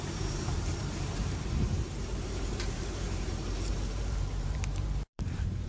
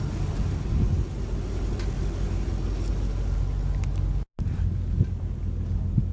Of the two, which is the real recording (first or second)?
second